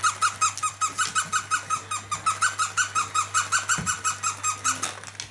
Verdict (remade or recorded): recorded